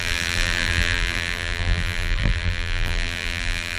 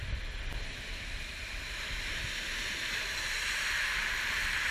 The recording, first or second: second